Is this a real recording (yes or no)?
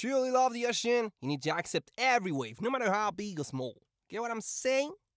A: yes